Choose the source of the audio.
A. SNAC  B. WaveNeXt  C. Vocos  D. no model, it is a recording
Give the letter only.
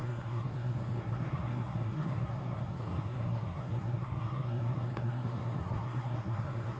A